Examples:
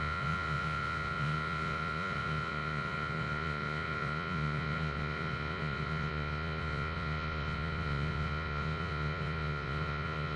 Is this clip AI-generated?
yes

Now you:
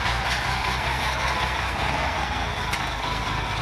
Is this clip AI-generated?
yes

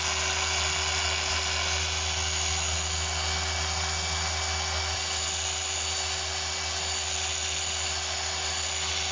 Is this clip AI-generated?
no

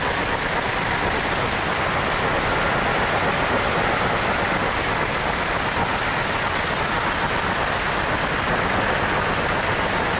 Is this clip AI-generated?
no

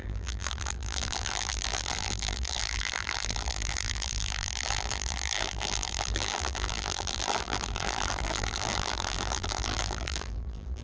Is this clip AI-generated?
yes